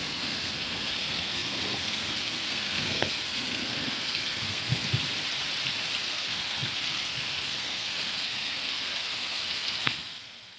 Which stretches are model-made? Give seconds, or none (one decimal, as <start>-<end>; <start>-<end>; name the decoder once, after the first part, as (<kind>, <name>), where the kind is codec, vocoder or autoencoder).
0.0-4.8 (codec, SNAC); 6.0-10.6